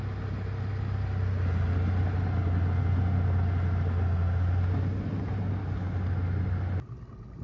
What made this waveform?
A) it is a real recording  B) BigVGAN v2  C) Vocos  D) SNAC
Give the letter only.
A